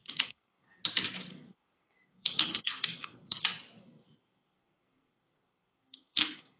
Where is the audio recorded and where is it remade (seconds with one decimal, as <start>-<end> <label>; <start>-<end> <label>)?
0.0-0.8 remade; 0.8-1.3 recorded; 1.3-3.4 remade; 3.4-3.8 recorded; 3.8-6.6 remade